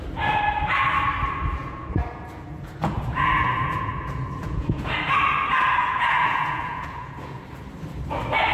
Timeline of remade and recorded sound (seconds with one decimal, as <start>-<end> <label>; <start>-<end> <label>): 0.0-1.6 recorded; 1.6-5.0 remade; 5.0-5.8 recorded; 5.8-7.4 remade; 7.4-8.5 recorded